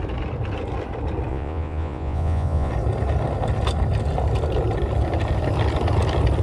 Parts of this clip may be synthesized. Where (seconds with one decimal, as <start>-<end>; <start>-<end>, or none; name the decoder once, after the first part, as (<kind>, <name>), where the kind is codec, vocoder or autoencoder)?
1.3-2.7 (vocoder, Vocos)